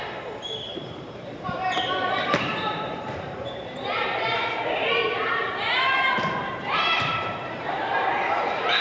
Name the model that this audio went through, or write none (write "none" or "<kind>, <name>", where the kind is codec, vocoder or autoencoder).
vocoder, BigVGAN v2